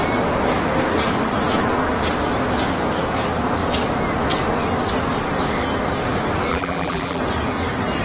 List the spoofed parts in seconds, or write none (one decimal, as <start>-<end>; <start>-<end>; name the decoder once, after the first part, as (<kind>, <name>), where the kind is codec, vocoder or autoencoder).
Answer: 6.5-7.2 (vocoder, BigVGAN v2)